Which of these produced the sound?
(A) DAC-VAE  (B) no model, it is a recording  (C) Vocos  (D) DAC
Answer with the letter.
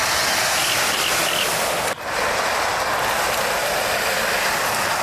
B